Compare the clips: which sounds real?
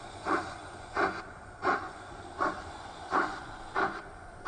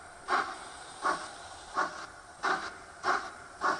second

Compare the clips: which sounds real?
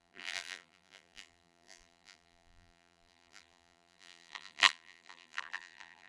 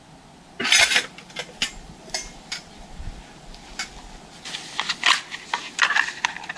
second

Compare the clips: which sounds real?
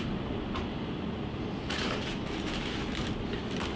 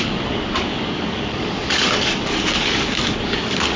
first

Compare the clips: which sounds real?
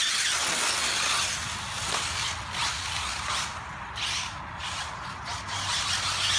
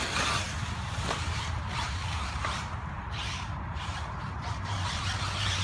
first